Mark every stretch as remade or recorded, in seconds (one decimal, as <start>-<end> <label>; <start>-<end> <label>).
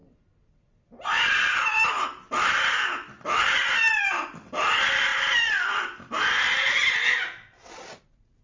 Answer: 0.0-8.4 recorded